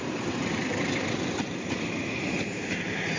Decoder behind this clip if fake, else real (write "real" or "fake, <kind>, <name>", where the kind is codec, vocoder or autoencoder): fake, vocoder, BigVGAN v2